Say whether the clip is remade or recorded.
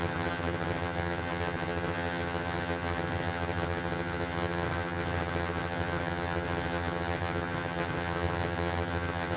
remade